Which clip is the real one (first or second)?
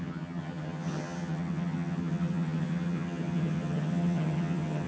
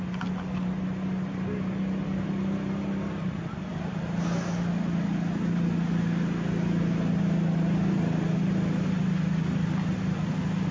second